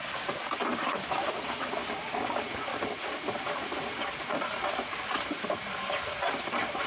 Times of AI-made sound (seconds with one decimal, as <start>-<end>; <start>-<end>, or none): 1.8-2.4